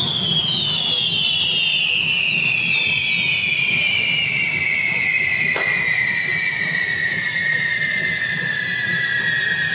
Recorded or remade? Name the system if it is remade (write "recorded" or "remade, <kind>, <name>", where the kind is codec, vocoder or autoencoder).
recorded